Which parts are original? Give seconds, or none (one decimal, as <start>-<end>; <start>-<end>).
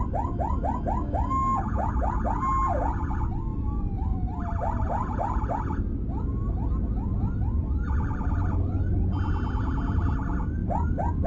0.0-3.5; 5.6-11.3